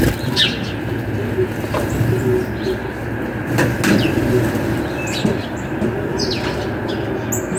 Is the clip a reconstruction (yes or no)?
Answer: no